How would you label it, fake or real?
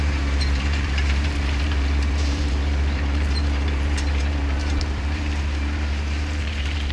fake